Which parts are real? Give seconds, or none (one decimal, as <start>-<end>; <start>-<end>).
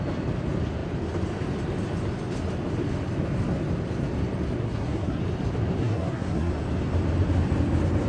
0.0-4.6; 5.2-5.8; 6.5-8.1